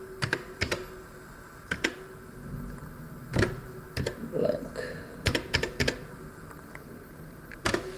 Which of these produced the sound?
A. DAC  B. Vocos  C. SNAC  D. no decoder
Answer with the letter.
D